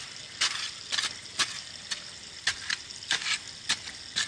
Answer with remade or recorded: recorded